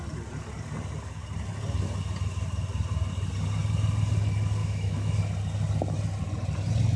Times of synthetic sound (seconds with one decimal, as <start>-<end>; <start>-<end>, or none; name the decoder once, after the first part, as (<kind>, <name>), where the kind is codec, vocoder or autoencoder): 4.6-5.2 (autoencoder, DAC-VAE)